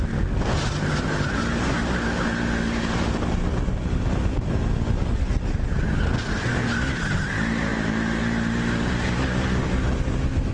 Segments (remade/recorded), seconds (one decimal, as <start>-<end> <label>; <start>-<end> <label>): 0.0-10.5 recorded